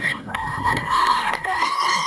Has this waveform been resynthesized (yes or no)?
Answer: yes